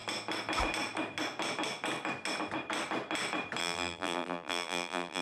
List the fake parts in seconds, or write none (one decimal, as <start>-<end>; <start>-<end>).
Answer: 3.6-5.2

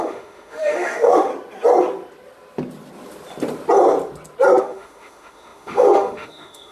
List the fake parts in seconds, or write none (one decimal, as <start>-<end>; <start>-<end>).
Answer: 0.0-1.3; 4.6-6.7

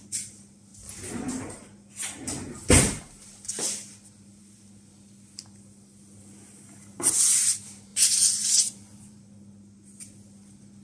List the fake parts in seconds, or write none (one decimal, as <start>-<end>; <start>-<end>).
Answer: 7.9-9.2

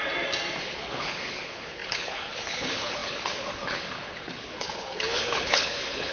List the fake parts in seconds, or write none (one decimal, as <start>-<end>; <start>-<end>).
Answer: 0.6-6.1